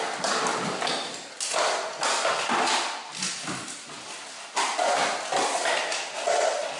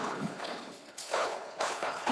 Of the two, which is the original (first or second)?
first